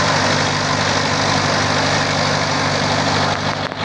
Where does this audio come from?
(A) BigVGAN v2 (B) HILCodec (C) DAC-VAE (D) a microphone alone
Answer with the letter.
D